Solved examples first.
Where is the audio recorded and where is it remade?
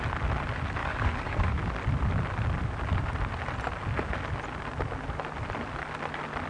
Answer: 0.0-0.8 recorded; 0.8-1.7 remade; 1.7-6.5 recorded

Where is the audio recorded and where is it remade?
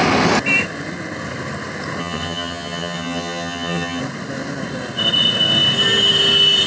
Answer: 0.0-2.0 recorded; 2.0-4.0 remade; 4.0-6.7 recorded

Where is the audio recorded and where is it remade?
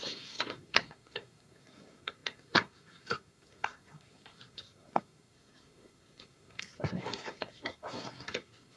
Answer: 0.0-8.8 remade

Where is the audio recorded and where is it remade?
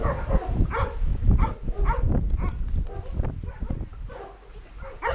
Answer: 0.0-5.1 recorded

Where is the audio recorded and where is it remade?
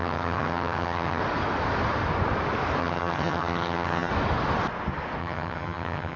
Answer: 0.0-1.2 remade; 1.2-2.8 recorded; 2.8-4.1 remade; 4.1-5.2 recorded; 5.2-6.2 remade